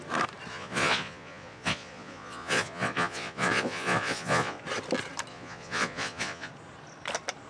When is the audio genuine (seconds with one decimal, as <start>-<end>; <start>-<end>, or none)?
0.0-0.5; 4.6-5.3; 6.5-7.5